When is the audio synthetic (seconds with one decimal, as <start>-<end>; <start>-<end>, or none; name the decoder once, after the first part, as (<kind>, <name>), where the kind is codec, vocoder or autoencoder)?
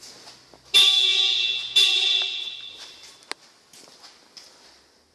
none